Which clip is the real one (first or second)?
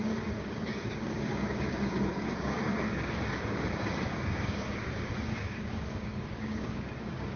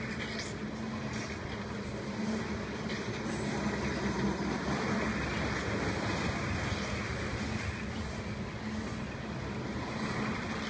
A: second